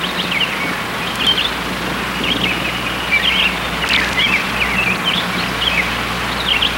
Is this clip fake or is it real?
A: real